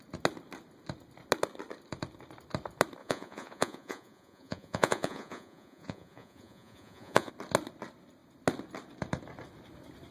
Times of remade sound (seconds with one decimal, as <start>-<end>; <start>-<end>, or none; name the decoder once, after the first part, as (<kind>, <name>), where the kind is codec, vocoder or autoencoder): 3.0-7.3 (vocoder, Vocos)